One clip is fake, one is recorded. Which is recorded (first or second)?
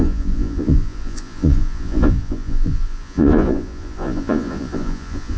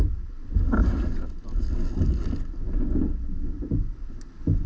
second